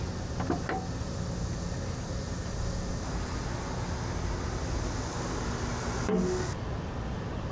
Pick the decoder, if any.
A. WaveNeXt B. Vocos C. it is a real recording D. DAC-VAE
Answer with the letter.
C